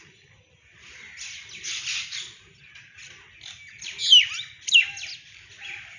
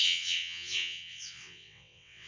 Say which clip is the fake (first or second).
second